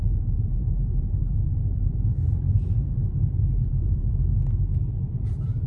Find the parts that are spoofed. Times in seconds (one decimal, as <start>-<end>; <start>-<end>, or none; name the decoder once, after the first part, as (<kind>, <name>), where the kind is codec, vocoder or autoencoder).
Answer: 0.0-4.3 (vocoder, BigVGAN v2); 4.9-5.7